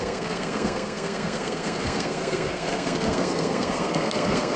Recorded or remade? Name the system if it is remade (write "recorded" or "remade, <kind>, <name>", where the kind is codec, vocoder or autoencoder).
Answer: remade, codec, SNAC